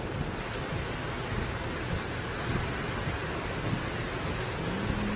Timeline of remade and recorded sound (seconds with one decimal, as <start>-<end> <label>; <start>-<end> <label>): 0.0-5.2 recorded